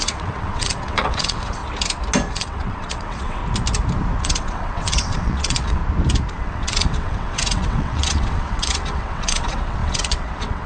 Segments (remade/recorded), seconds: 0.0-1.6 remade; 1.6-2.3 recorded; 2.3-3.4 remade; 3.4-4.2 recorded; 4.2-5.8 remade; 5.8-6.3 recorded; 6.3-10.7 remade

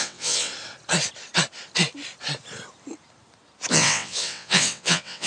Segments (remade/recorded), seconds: 0.0-0.5 remade; 0.5-3.7 recorded; 3.7-5.3 remade